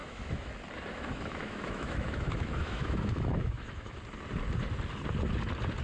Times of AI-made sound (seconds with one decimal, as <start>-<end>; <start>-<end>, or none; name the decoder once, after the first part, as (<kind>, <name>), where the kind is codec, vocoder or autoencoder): 0.0-0.5 (autoencoder, DAC-VAE); 0.9-4.0